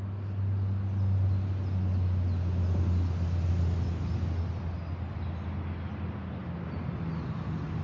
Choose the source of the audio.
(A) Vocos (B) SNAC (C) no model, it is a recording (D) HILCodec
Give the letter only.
C